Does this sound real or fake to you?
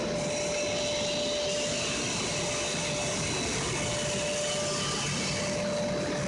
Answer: real